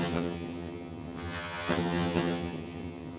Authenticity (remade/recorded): remade